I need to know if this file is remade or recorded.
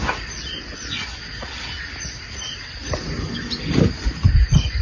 recorded